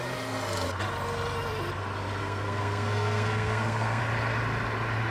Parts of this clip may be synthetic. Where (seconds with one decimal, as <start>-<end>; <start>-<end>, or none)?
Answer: 2.2-4.0